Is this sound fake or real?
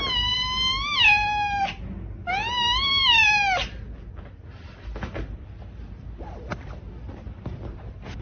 real